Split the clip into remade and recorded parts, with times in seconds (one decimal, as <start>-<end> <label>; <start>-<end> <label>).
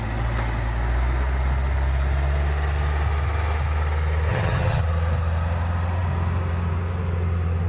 0.0-4.3 recorded; 4.3-4.8 remade; 4.8-7.7 recorded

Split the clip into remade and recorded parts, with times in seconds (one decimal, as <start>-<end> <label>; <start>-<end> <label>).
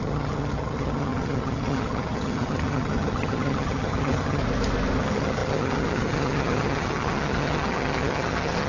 0.0-4.4 remade; 4.4-5.0 recorded; 5.0-8.7 remade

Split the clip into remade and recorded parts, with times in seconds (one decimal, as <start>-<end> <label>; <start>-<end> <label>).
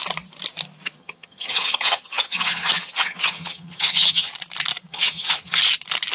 0.0-1.0 recorded; 1.0-4.3 remade; 4.3-4.9 recorded; 4.9-5.6 remade; 5.6-6.1 recorded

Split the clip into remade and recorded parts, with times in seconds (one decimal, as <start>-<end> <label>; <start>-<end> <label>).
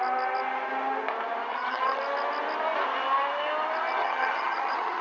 0.0-1.5 recorded; 1.5-2.0 remade; 2.0-4.0 recorded; 4.0-5.0 remade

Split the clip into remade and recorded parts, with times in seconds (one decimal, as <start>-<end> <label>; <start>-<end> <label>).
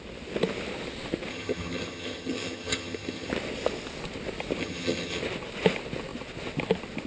0.0-1.3 recorded; 1.3-3.3 remade; 3.3-4.6 recorded; 4.6-5.2 remade; 5.2-7.1 recorded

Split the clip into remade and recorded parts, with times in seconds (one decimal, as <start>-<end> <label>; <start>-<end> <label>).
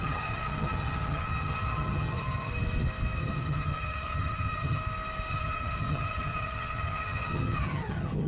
0.0-2.5 remade; 2.5-3.2 recorded; 3.2-4.8 remade; 4.8-5.3 recorded; 5.3-8.3 remade